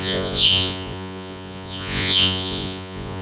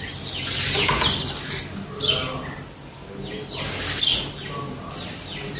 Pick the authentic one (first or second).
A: second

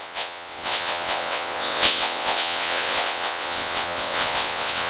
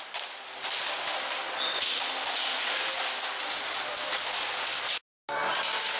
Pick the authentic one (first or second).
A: second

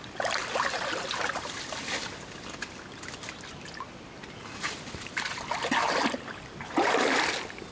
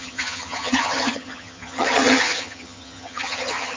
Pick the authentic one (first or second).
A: first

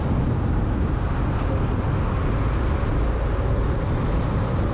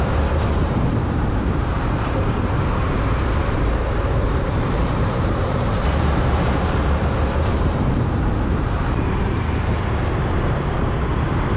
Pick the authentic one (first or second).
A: first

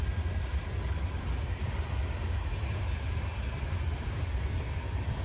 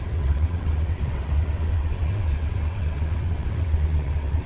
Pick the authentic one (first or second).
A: first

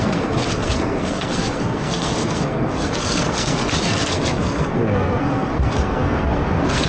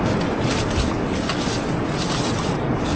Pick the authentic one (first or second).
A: second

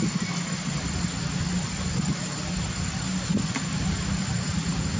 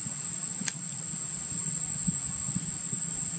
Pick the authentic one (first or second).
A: second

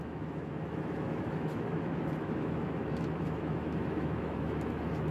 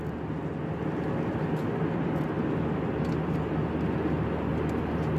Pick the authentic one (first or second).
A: second